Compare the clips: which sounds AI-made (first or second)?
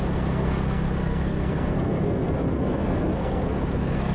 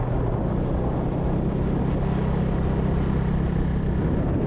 first